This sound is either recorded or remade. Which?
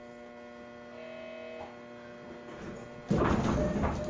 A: recorded